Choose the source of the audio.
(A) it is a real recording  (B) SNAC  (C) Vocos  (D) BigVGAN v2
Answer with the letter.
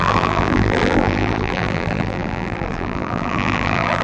D